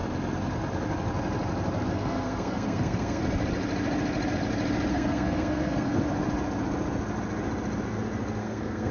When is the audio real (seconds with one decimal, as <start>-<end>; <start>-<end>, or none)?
0.0-1.9; 3.2-4.9; 6.0-8.4